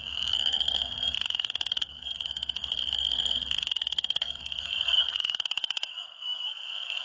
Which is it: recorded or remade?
remade